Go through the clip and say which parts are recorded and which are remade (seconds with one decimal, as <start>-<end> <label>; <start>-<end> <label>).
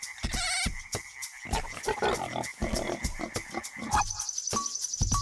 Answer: 0.0-5.2 recorded